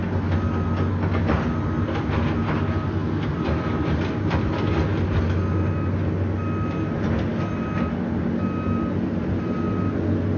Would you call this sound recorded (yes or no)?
yes